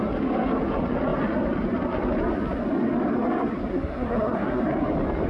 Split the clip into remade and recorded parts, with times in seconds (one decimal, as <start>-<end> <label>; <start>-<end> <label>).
0.0-3.7 recorded; 3.7-4.6 remade; 4.6-5.3 recorded